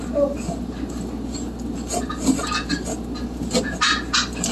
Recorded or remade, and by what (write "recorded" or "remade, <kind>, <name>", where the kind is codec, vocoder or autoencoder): recorded